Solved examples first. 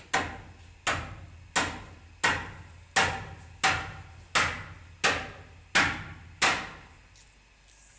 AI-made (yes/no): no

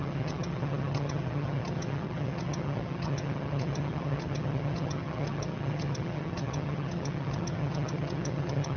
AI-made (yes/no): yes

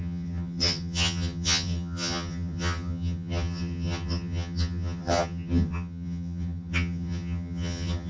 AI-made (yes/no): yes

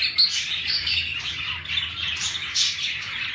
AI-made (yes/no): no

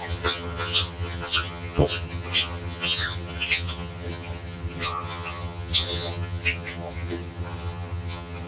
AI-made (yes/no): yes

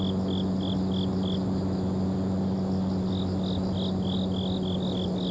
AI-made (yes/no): no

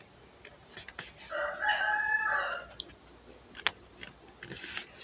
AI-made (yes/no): no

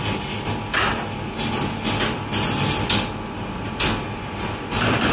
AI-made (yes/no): no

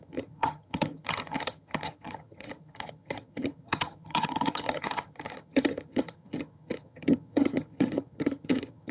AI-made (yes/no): yes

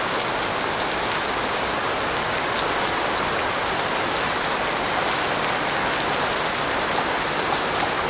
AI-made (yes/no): no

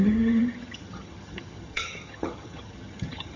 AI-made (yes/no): yes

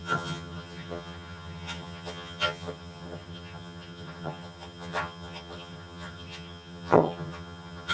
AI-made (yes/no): yes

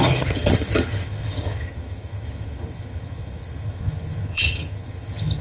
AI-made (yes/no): yes